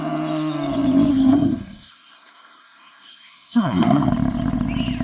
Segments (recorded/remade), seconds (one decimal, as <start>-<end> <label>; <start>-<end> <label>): 0.0-1.1 recorded; 1.1-4.1 remade; 4.1-5.0 recorded